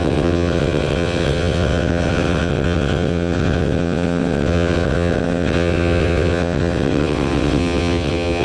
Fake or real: fake